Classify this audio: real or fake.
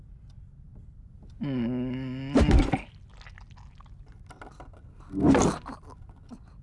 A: real